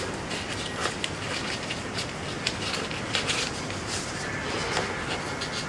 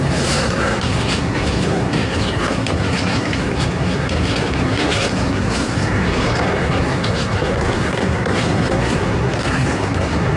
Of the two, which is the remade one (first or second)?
second